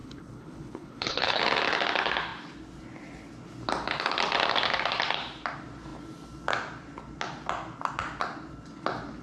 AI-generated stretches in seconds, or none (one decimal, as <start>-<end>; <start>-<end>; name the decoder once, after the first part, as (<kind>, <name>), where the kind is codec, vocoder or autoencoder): 0.0-1.4 (codec, HILCodec)